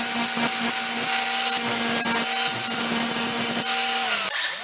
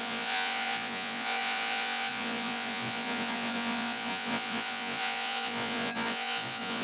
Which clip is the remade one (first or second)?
second